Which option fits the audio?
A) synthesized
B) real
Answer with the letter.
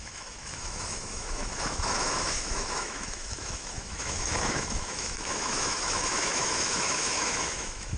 A